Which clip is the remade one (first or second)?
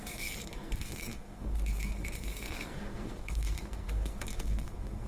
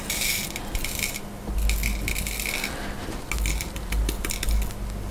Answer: first